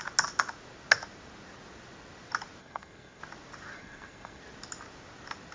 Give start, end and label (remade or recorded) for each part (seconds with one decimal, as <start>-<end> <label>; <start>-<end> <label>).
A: 0.0-2.6 recorded; 2.6-3.2 remade; 3.2-3.7 recorded; 3.7-4.4 remade; 4.4-5.5 recorded